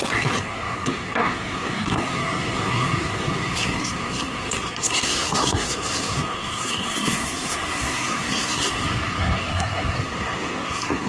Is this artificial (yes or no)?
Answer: yes